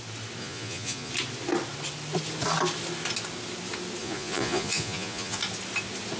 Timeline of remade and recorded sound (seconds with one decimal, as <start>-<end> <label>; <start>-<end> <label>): 0.0-0.4 recorded; 0.4-1.1 remade; 1.1-4.0 recorded; 4.0-5.4 remade; 5.4-6.2 recorded